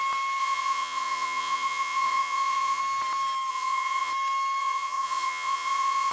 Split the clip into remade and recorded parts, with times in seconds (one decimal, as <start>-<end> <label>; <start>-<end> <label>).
0.0-0.4 recorded; 0.4-2.8 remade; 2.8-3.5 recorded; 3.5-4.1 remade; 4.1-4.6 recorded; 4.6-6.1 remade